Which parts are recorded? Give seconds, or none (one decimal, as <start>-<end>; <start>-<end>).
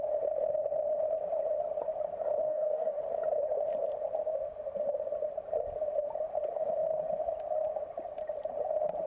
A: 0.0-2.5; 3.0-9.1